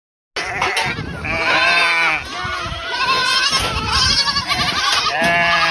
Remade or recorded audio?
recorded